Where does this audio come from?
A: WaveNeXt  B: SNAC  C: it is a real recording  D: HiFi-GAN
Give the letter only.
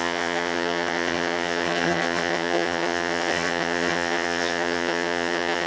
D